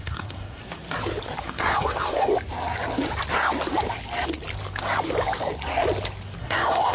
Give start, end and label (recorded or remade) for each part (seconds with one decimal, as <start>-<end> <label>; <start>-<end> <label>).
0.0-0.6 remade; 0.6-1.4 recorded; 1.4-2.3 remade; 2.3-6.4 recorded; 6.4-6.9 remade